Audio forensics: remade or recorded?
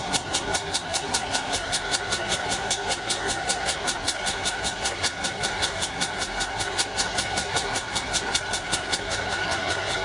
remade